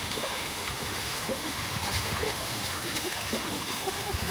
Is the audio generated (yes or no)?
yes